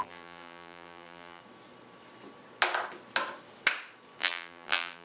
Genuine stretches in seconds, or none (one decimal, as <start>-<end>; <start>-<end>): 1.4-4.2